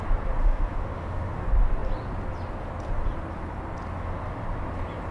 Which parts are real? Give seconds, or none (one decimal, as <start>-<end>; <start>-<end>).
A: 0.0-0.4; 1.4-5.1